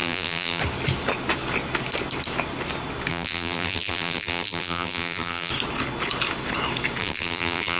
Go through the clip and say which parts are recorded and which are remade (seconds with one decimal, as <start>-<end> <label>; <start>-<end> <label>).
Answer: 0.0-0.6 remade; 0.6-3.1 recorded; 3.1-5.5 remade; 5.5-7.0 recorded; 7.0-7.8 remade